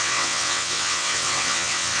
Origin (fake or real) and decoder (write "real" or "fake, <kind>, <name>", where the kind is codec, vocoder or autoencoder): fake, vocoder, WaveNeXt